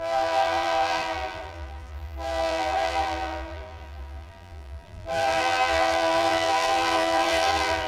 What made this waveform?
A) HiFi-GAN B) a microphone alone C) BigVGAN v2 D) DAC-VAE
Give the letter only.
C